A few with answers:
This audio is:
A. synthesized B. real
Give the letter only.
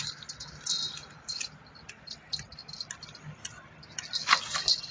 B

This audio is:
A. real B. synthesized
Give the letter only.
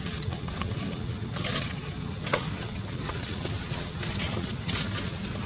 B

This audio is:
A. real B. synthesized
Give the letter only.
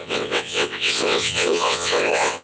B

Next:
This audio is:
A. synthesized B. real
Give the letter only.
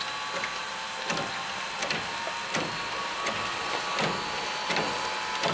B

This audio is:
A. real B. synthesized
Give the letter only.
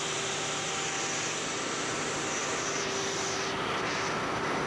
A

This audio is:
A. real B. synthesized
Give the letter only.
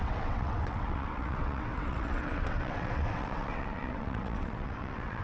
B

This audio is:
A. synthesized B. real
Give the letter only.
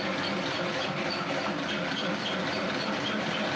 B